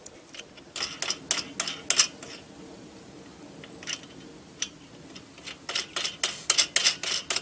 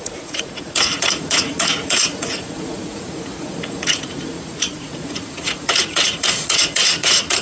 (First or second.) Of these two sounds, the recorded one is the first